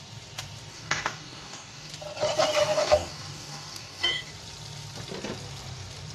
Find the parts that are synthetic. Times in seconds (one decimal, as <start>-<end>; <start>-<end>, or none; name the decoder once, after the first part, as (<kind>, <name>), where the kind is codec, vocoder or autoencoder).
0.7-1.9 (codec, DAC); 2.6-4.3